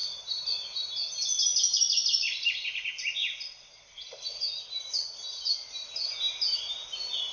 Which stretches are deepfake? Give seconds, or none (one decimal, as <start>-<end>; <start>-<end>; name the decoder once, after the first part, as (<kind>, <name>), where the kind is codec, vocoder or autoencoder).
none